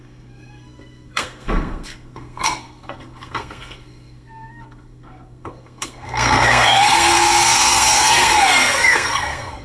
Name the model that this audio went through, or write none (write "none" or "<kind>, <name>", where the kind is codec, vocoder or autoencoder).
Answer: codec, SNAC